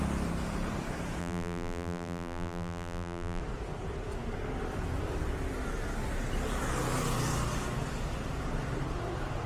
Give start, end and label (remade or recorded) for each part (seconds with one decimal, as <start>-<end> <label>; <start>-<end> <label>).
0.0-1.2 recorded; 1.2-3.4 remade; 3.4-9.5 recorded